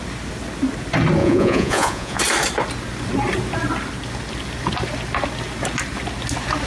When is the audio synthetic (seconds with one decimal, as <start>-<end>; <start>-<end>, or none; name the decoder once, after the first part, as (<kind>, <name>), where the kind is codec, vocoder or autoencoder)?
1.2-2.2 (vocoder, Vocos)